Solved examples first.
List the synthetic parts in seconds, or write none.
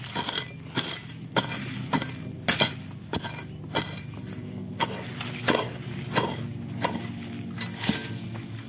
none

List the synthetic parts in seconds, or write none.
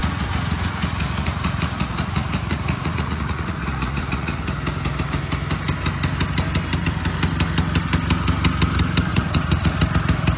0.0-4.4 (vocoder, Vocos); 9.1-9.8